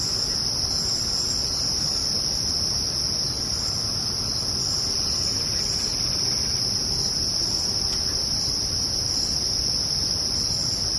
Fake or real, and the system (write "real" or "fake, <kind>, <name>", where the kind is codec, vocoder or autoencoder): real